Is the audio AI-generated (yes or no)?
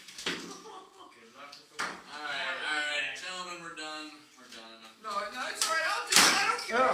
yes